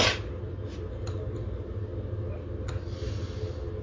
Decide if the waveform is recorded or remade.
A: recorded